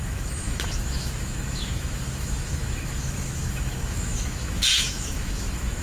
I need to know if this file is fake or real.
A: fake